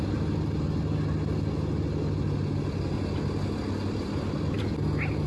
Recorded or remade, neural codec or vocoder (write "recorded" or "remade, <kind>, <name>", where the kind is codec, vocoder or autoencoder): recorded